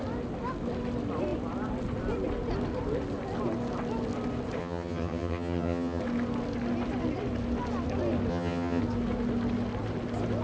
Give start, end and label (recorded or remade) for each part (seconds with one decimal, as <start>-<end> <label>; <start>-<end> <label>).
0.0-4.6 recorded; 4.6-6.0 remade; 6.0-8.3 recorded; 8.3-8.8 remade; 8.8-10.4 recorded

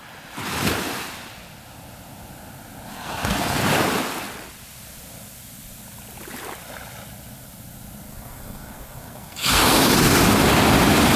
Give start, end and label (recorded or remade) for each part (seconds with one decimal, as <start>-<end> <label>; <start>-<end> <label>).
0.0-2.9 recorded; 2.9-3.6 remade; 3.6-8.1 recorded; 8.1-9.8 remade; 9.8-11.2 recorded

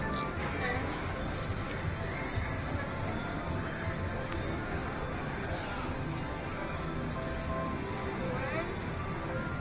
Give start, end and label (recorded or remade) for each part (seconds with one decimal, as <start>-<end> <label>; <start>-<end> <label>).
0.0-0.4 recorded; 0.4-1.2 remade; 1.2-9.6 recorded

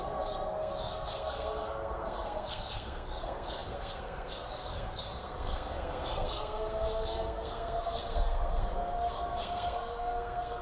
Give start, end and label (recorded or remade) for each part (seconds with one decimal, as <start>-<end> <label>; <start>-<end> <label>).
0.0-10.6 remade

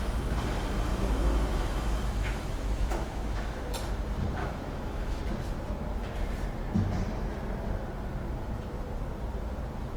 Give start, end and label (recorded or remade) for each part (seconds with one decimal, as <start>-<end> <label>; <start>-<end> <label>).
0.0-0.9 recorded; 0.9-3.6 remade; 3.6-4.4 recorded; 4.4-5.2 remade; 5.2-10.0 recorded

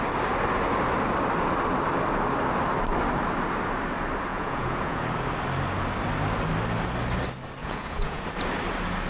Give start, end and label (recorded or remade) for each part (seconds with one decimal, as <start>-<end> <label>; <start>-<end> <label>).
0.0-4.3 recorded; 4.3-5.0 remade; 5.0-7.6 recorded; 7.6-8.2 remade; 8.2-9.1 recorded

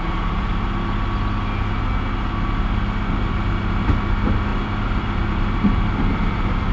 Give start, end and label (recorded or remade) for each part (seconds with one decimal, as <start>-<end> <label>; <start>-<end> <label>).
0.0-6.7 recorded

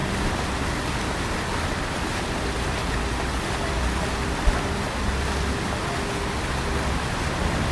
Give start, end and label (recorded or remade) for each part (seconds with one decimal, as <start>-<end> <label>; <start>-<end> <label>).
0.0-7.7 recorded